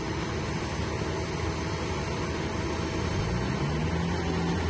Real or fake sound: real